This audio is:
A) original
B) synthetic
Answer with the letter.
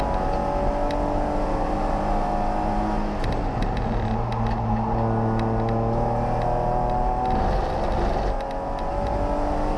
A